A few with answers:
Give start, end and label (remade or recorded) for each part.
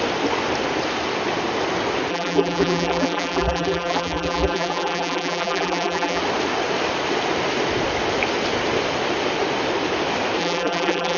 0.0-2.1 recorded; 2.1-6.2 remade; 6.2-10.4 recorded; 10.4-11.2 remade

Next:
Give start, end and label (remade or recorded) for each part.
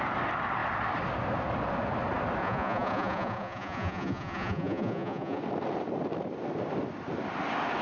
0.0-2.4 recorded; 2.4-5.4 remade; 5.4-7.8 recorded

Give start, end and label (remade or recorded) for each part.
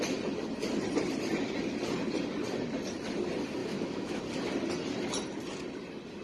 0.0-3.6 recorded; 3.6-4.2 remade; 4.2-6.2 recorded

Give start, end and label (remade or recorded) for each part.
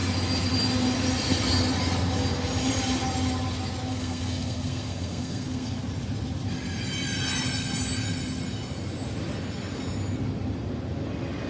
0.0-3.9 recorded; 3.9-5.8 remade; 5.8-11.5 recorded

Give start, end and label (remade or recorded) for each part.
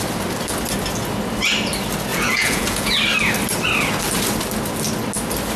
0.0-2.1 recorded; 2.1-2.9 remade; 2.9-5.6 recorded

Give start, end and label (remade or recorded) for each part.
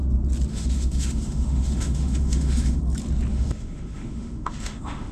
0.0-0.5 recorded; 0.5-2.8 remade; 2.8-3.3 recorded; 3.3-5.1 remade